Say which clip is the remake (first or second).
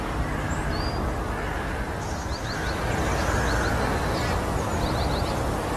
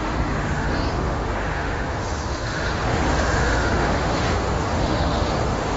second